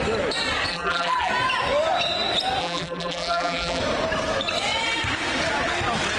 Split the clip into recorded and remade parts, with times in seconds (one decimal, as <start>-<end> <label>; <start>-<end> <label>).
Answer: 0.0-0.7 recorded; 0.7-1.3 remade; 1.3-2.6 recorded; 2.6-3.8 remade; 3.8-6.2 recorded